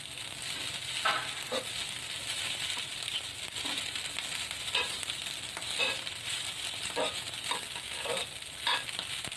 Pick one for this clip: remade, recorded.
recorded